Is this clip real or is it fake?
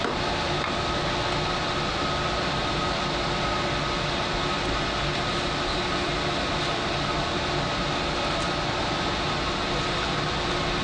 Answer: real